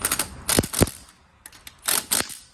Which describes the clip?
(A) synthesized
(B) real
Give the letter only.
B